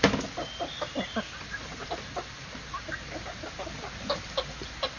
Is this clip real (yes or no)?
yes